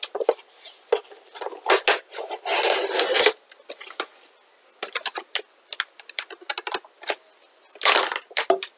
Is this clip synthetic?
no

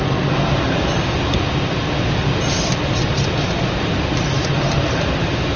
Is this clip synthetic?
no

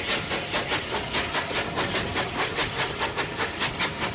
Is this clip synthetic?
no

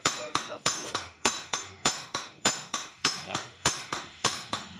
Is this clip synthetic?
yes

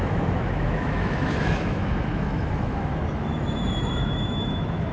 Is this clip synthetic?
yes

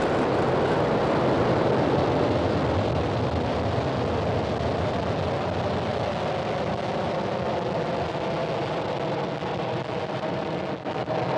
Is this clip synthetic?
no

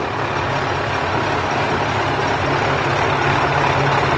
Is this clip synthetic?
no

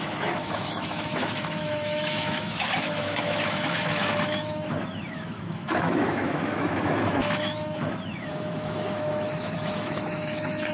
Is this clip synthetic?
yes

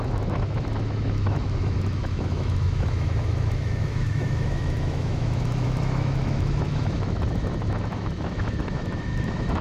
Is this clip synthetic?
yes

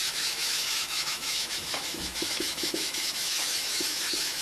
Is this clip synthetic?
yes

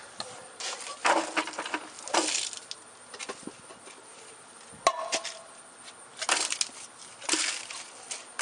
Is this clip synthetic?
no